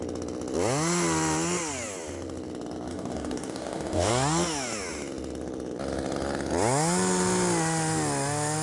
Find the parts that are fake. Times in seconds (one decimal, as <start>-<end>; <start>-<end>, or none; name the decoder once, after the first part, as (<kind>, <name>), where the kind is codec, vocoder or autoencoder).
2.9-4.1 (codec, DAC)